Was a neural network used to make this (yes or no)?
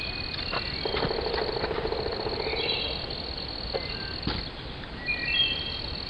no